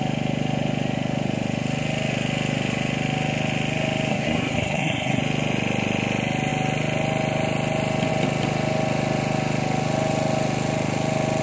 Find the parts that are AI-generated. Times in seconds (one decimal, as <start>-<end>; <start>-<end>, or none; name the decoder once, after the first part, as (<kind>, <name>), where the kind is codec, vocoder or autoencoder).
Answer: 4.1-5.2 (codec, SNAC)

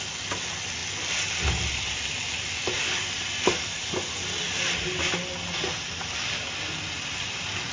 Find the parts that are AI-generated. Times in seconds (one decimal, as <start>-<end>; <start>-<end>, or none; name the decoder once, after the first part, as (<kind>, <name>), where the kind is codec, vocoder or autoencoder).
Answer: none

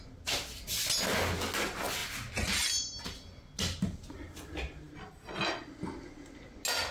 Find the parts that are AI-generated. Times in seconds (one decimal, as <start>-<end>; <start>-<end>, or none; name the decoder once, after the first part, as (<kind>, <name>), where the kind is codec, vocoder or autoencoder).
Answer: none

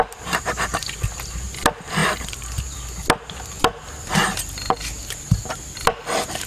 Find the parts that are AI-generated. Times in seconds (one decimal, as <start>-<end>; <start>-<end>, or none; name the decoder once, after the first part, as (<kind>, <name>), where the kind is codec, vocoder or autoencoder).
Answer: none